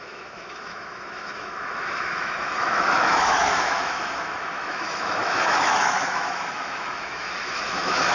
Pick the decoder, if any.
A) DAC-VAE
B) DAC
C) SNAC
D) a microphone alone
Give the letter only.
A